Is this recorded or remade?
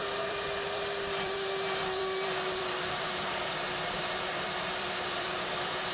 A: remade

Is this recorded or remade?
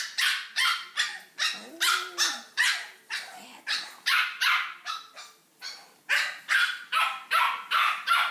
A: recorded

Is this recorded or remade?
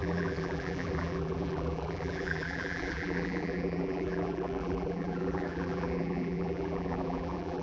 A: remade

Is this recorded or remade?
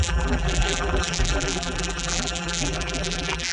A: remade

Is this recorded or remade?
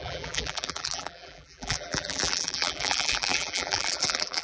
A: remade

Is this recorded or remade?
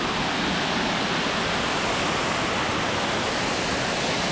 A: recorded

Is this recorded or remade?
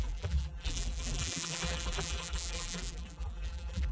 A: remade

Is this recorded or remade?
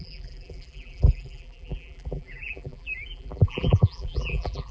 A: remade